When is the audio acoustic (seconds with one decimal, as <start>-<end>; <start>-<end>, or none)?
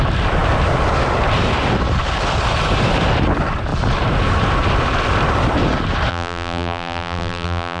0.0-6.1